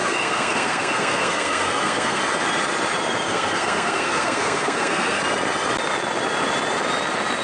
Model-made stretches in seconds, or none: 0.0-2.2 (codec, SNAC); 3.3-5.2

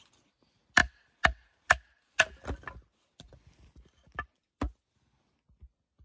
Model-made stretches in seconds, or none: none

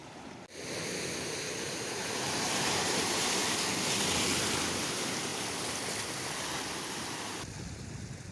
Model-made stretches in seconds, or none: 1.7-3.4 (vocoder, BigVGAN v2); 4.3-5.3; 7.7-8.3

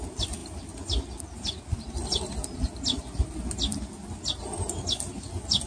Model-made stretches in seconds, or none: none

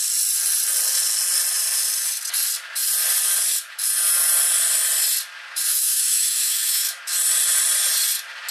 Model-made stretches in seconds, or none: 5.7-7.0 (autoencoder, DAC-VAE)

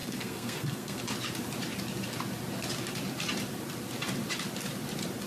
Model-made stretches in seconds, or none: 0.0-1.0 (codec, SNAC)

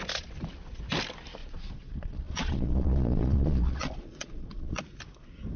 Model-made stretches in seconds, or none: 1.4-4.8 (vocoder, Vocos)

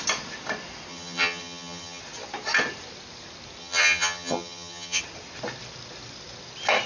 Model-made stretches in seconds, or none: 0.9-2.0 (vocoder, HiFi-GAN); 3.6-5.0